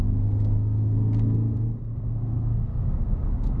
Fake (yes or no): yes